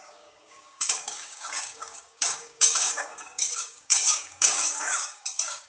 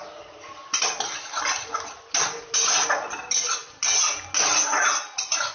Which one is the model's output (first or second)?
first